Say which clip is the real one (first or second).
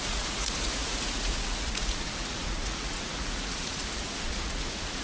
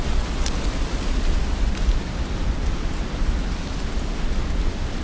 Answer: second